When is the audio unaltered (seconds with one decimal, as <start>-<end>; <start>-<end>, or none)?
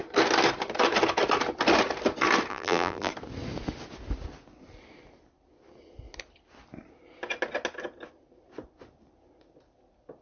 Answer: 0.0-2.5; 3.1-10.2